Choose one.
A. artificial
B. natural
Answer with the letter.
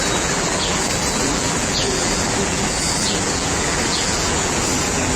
A